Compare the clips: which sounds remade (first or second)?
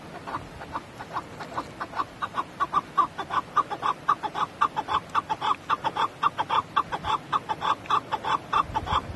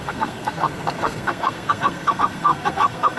second